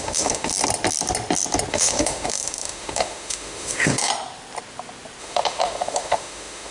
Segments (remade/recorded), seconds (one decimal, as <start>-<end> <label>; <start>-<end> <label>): 0.0-0.5 remade; 0.5-1.7 recorded; 1.7-4.1 remade; 4.1-5.2 recorded; 5.2-6.7 remade